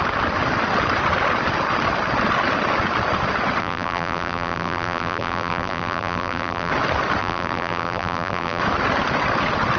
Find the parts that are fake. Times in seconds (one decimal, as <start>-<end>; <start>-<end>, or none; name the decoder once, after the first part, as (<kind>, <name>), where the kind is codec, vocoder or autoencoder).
3.6-6.7 (vocoder, BigVGAN v2); 7.2-8.6

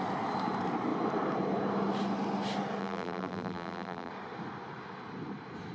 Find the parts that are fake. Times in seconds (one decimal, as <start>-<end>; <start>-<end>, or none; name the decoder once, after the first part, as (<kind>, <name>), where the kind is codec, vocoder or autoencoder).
2.8-4.1 (vocoder, BigVGAN v2)

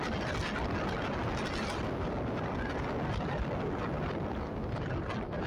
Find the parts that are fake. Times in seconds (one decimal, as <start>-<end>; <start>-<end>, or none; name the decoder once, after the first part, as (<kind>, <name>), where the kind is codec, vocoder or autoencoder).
none

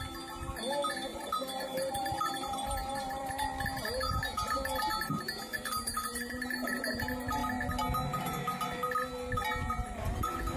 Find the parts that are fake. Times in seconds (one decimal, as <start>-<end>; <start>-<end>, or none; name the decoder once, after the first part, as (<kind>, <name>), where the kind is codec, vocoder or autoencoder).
1.1-3.3 (vocoder, BigVGAN v2); 5.5-7.0

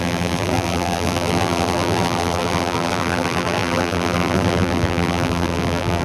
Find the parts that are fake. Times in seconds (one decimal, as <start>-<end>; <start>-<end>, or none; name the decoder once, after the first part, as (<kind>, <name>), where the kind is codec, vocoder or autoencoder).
0.0-6.0 (vocoder, BigVGAN v2)

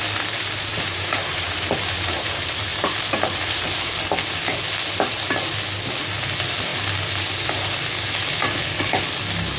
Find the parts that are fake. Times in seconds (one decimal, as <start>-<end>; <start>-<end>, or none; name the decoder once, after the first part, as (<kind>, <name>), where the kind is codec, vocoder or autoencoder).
0.7-2.3 (vocoder, BigVGAN v2); 2.7-3.9

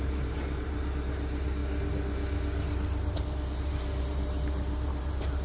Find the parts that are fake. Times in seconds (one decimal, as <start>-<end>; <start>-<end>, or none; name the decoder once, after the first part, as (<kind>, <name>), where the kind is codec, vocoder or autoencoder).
0.0-1.6 (vocoder, BigVGAN v2); 3.2-5.4

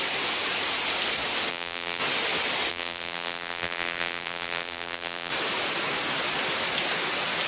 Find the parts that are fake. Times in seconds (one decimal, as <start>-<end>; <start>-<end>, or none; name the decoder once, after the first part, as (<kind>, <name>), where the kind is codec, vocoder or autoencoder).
1.5-2.0 (vocoder, BigVGAN v2); 2.7-5.3